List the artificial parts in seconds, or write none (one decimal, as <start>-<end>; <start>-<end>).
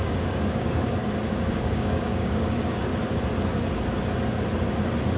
0.0-1.0; 1.5-2.9